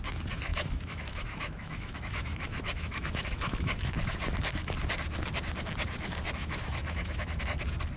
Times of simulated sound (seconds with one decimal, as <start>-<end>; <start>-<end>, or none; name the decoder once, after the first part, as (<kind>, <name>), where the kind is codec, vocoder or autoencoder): 0.5-4.2 (autoencoder, DAC-VAE); 6.4-7.4